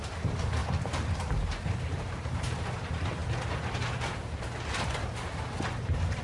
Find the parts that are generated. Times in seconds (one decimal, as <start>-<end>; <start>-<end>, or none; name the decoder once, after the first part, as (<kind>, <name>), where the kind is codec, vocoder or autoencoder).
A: 0.6-2.4 (vocoder, BigVGAN v2)